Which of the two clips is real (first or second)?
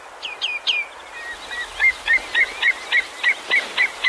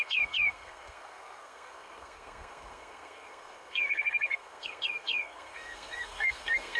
first